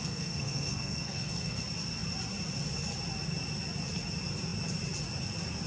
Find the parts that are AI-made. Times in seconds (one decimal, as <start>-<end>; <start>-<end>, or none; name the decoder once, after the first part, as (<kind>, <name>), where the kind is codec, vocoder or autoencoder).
0.0-1.6 (codec, SNAC)